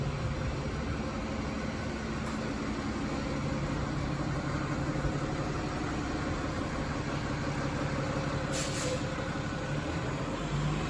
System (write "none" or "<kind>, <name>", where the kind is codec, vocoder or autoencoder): none